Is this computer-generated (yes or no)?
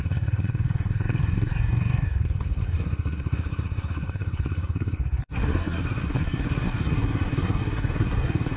yes